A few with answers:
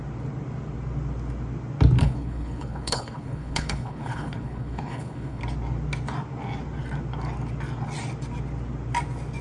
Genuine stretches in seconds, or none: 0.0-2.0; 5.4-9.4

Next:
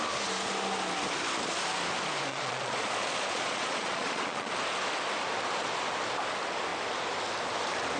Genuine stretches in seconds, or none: 0.0-2.3; 4.5-8.0